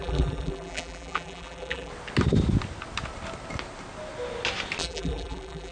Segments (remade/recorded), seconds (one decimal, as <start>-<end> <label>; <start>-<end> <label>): 0.0-1.9 remade; 1.9-4.8 recorded; 4.8-5.7 remade